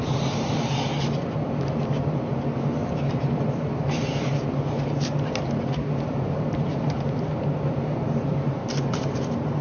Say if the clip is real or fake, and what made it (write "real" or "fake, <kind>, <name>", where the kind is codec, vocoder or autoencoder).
fake, vocoder, BigVGAN v2